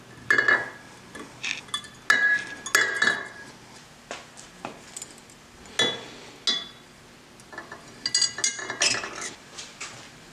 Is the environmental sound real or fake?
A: real